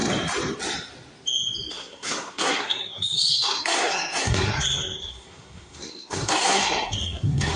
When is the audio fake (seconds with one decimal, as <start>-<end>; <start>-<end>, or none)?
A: 1.7-7.6